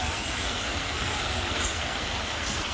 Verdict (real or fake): fake